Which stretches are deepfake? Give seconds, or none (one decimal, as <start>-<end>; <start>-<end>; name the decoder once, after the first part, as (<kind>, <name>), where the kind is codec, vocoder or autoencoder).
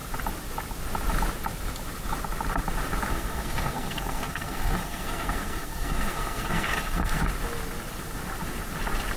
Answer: 3.1-7.2 (codec, SNAC)